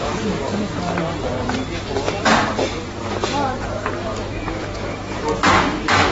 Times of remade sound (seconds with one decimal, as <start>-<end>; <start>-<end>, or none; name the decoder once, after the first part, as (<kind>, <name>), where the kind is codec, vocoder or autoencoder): 0.0-0.4 (autoencoder, DAC-VAE); 4.1-6.1